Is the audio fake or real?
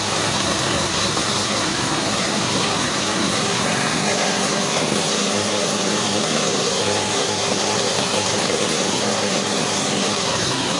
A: fake